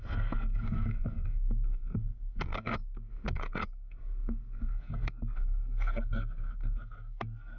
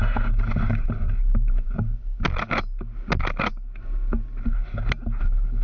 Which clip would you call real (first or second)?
second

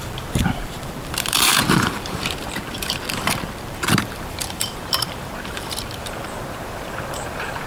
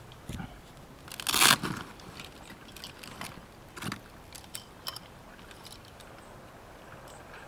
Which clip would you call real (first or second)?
second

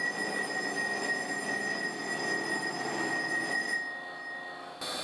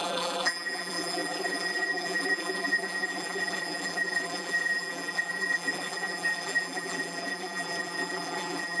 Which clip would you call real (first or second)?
first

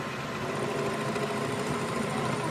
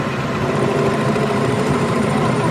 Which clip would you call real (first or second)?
first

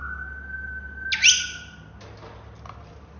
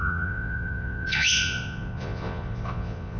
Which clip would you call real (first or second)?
first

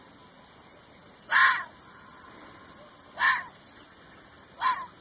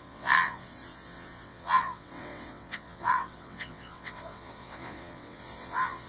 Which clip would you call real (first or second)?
first